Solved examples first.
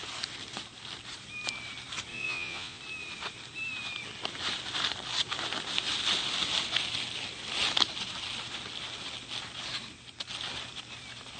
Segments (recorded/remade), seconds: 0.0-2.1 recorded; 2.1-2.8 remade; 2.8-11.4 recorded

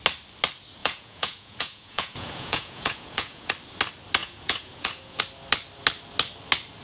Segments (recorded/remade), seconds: 0.0-0.8 recorded; 0.8-3.5 remade; 3.5-4.2 recorded; 4.2-5.2 remade; 5.2-6.8 recorded

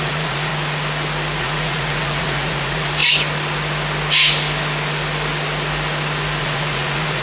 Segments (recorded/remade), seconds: 0.0-0.5 remade; 0.5-1.4 recorded; 1.4-3.0 remade; 3.0-6.4 recorded; 6.4-7.2 remade

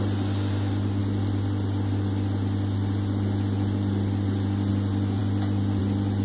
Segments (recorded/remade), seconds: 0.0-6.2 recorded

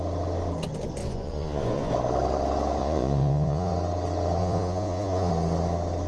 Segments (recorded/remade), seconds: 0.0-1.0 recorded; 1.0-1.9 remade; 1.9-2.8 recorded; 2.8-3.7 remade; 3.7-4.4 recorded; 4.4-5.3 remade; 5.3-6.1 recorded

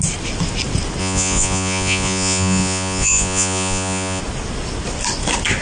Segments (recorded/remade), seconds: 0.0-1.0 recorded; 1.0-4.2 remade; 4.2-5.6 recorded

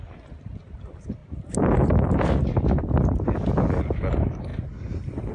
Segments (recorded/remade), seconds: 0.0-5.3 recorded

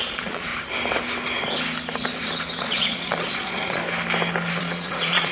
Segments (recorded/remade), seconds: 0.0-0.5 remade; 0.5-2.6 recorded; 2.6-3.8 remade; 3.8-4.6 recorded; 4.6-5.3 remade